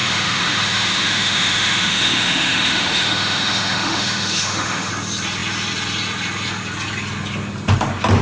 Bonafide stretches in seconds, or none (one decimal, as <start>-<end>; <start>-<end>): 4.9-8.2